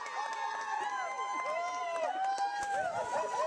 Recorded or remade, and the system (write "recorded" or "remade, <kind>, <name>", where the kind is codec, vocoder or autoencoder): recorded